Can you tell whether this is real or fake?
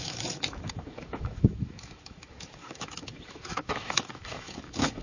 fake